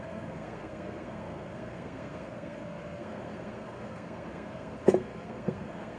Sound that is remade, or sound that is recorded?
remade